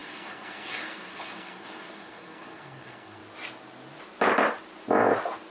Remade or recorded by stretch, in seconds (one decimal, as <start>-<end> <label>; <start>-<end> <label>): 0.0-3.2 remade; 3.2-5.5 recorded